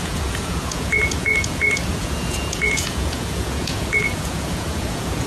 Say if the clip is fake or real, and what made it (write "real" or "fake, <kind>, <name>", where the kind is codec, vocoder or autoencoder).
fake, vocoder, Vocos